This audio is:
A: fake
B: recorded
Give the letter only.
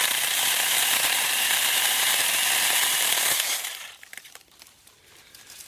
A